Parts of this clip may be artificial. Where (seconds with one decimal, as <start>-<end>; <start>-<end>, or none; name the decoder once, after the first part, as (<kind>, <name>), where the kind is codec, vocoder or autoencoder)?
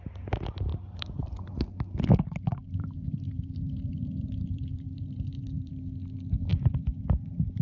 0.7-1.5 (vocoder, BigVGAN v2); 2.8-5.7